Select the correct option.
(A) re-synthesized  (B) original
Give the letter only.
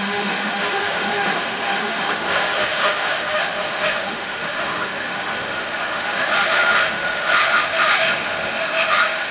A